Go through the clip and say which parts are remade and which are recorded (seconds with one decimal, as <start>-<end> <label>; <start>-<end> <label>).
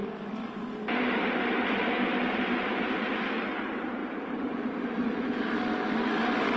0.0-2.1 recorded; 2.1-3.1 remade; 3.1-4.0 recorded; 4.0-5.5 remade; 5.5-6.6 recorded